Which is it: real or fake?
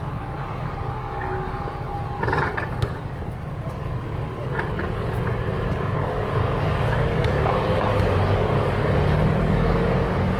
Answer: fake